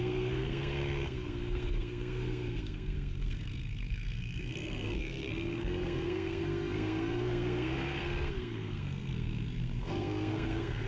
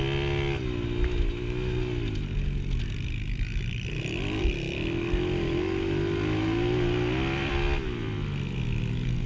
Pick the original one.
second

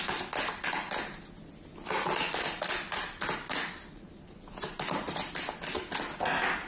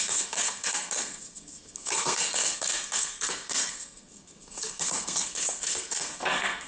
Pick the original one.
first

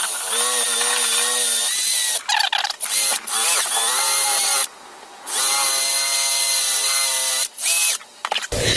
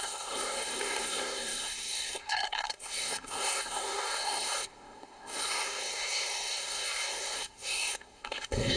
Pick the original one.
first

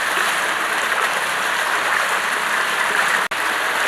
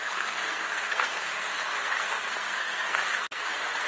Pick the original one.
first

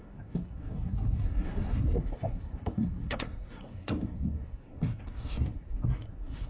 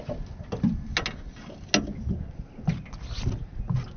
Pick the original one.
second